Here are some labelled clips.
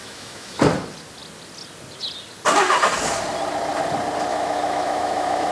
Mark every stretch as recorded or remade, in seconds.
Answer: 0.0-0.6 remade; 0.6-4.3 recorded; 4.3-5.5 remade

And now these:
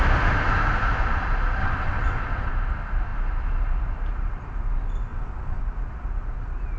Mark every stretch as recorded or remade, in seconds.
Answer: 0.0-1.6 recorded; 1.6-2.5 remade; 2.5-5.1 recorded; 5.1-5.6 remade; 5.6-6.8 recorded

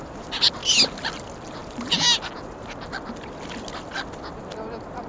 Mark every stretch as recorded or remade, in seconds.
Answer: 0.0-5.1 recorded

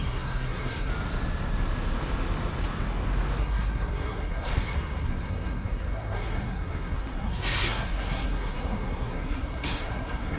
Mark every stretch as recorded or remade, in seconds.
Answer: 0.0-0.9 remade; 0.9-3.4 recorded; 3.4-10.4 remade

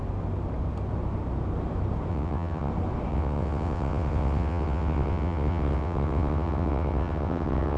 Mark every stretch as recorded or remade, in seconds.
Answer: 0.0-2.1 recorded; 2.1-2.7 remade; 2.7-3.1 recorded; 3.1-7.8 remade

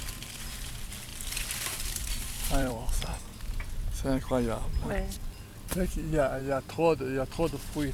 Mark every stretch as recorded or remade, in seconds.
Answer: 0.0-1.1 recorded; 1.1-3.2 remade; 3.2-7.9 recorded

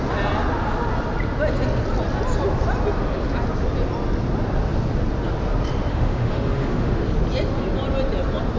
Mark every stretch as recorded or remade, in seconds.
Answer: 0.0-5.9 recorded; 5.9-7.0 remade; 7.0-8.6 recorded

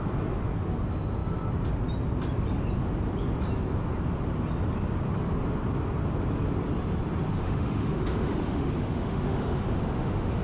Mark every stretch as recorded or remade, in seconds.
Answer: 0.0-7.3 recorded; 7.3-10.4 remade